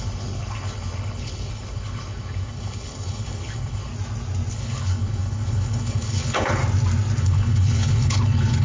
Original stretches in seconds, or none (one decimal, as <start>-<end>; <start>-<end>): 3.9-4.5; 6.6-7.2